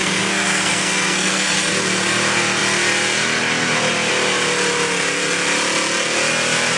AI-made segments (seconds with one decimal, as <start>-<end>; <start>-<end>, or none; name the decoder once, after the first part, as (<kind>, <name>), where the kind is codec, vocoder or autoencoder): 0.0-1.7 (codec, SNAC)